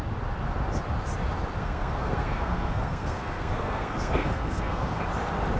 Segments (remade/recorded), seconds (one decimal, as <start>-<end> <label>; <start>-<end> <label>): 0.0-1.6 recorded; 1.6-5.0 remade; 5.0-5.6 recorded